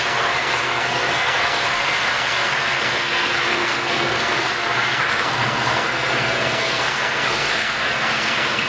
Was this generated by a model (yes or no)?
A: yes